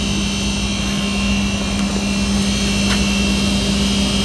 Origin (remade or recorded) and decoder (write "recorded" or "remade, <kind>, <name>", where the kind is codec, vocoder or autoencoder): recorded